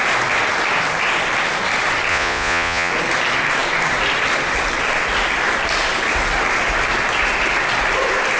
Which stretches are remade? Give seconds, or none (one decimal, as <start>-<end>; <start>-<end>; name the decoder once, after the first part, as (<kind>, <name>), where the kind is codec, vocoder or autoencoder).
2.1-2.9 (vocoder, Vocos)